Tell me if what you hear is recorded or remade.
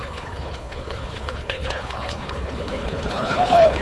remade